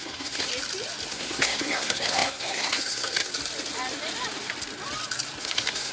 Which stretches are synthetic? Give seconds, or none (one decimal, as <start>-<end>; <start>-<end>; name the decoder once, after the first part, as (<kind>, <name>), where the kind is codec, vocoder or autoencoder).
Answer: 0.0-0.5 (codec, SNAC); 1.1-3.3; 5.4-5.9